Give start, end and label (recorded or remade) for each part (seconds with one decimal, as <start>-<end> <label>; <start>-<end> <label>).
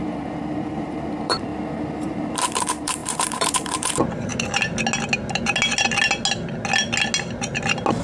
0.0-1.5 remade; 1.5-2.0 recorded; 2.0-4.3 remade; 4.3-8.0 recorded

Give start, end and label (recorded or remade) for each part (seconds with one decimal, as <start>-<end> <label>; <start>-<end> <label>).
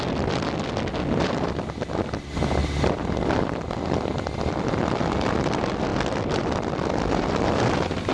0.0-2.6 recorded; 2.6-4.5 remade; 4.5-5.9 recorded; 5.9-7.6 remade; 7.6-8.1 recorded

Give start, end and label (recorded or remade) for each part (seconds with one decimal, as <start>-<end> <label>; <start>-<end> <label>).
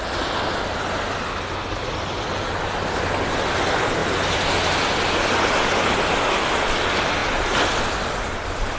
0.0-8.8 recorded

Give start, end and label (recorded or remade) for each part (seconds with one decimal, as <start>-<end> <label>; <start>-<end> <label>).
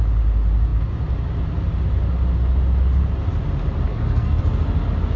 0.0-3.9 recorded; 3.9-4.4 remade; 4.4-5.2 recorded